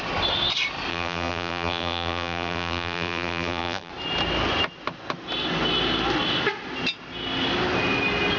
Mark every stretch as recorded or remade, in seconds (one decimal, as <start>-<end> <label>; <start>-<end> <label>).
0.0-0.9 recorded; 0.9-3.9 remade; 3.9-8.4 recorded